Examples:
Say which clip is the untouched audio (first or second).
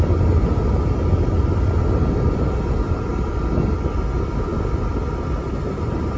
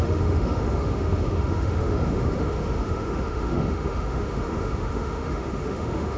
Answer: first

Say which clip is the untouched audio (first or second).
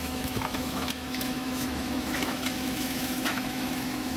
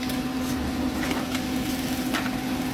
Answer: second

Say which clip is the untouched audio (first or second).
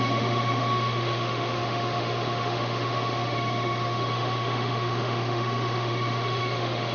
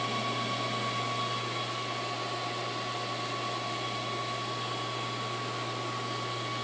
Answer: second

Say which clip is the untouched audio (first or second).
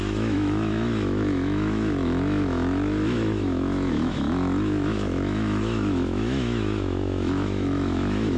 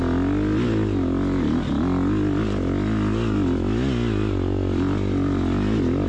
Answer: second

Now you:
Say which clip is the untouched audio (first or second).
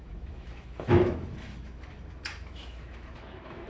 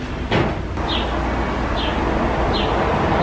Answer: second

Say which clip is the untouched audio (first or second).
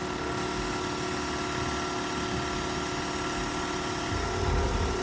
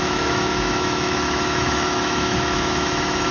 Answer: first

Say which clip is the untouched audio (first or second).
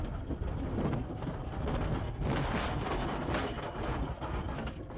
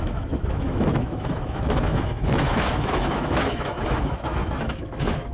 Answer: first